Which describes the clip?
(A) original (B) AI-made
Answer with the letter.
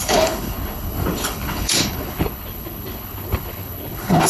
B